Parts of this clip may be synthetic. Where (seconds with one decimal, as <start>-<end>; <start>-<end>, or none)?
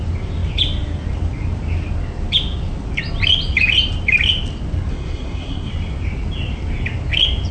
4.9-5.7